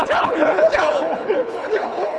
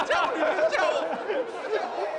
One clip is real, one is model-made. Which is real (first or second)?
second